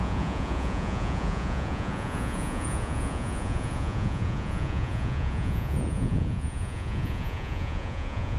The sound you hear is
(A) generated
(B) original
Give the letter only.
A